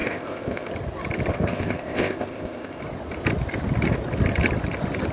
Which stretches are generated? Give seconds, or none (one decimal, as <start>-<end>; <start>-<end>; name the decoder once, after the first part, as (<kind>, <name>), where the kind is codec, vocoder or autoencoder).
0.0-0.7 (codec, ZipCodec); 1.3-2.8